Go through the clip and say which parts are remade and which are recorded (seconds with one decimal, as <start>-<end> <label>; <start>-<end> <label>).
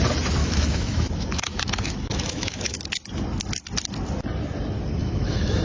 0.0-0.4 recorded; 0.4-2.8 remade; 2.8-5.0 recorded; 5.0-5.6 remade